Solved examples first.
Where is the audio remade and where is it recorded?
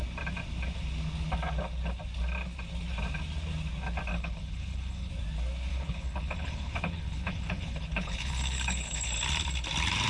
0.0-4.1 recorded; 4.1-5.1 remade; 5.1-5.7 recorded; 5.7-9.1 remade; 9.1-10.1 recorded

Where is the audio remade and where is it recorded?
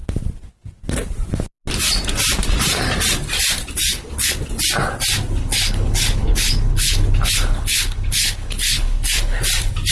0.0-3.9 recorded; 3.9-4.4 remade; 4.4-5.4 recorded; 5.4-9.4 remade; 9.4-9.9 recorded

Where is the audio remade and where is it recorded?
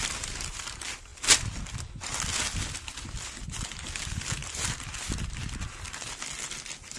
0.0-7.0 recorded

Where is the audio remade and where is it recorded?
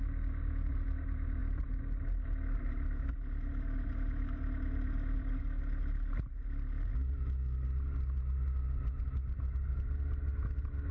0.0-10.9 recorded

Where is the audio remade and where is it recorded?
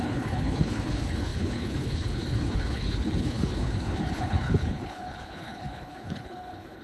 0.0-6.8 remade